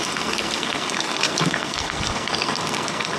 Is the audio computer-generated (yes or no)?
yes